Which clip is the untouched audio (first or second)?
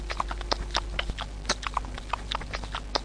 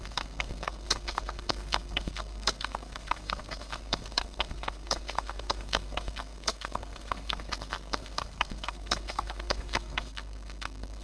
first